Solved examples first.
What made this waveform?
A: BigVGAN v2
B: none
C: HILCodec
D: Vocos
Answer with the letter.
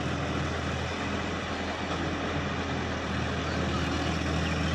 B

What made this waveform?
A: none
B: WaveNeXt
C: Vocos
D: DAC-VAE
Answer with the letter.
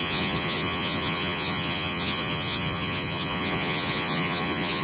C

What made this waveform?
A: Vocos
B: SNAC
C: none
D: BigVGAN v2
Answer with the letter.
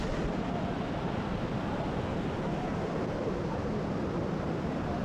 C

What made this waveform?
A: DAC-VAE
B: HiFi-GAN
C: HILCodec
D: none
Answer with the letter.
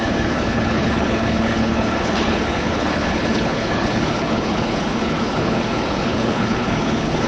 C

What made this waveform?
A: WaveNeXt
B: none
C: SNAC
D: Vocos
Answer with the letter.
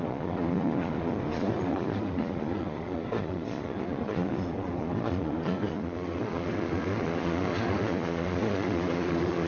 D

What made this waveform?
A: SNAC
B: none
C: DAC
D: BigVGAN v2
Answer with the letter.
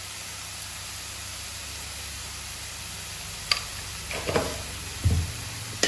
B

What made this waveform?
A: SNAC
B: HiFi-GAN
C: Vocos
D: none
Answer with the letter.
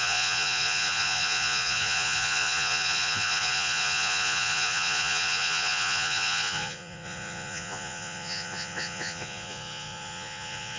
C